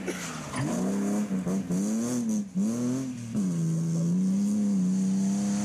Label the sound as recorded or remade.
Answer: recorded